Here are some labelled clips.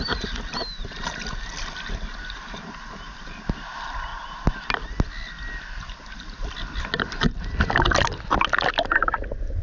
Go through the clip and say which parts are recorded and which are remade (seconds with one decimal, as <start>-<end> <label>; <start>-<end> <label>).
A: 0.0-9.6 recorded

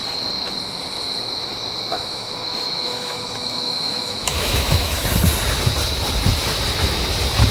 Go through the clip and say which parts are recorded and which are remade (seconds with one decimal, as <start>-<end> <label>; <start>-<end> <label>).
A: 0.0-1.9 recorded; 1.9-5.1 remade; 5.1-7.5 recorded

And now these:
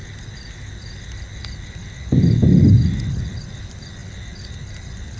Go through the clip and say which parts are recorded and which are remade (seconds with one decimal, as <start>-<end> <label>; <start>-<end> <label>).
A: 0.0-5.2 recorded

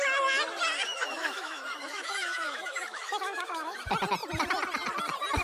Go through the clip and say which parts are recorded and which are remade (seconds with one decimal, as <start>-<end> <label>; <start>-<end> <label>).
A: 0.0-0.8 recorded; 0.8-3.8 remade; 3.8-5.4 recorded

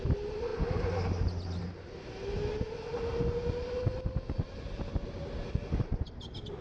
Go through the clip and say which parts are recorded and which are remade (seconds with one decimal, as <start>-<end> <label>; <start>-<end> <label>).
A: 0.0-6.6 recorded